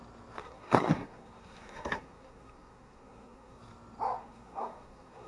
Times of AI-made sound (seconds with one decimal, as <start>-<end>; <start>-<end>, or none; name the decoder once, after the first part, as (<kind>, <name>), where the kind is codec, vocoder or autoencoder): 0.4-3.6 (codec, SNAC); 4.2-5.3